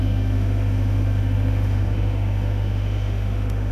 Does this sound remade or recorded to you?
remade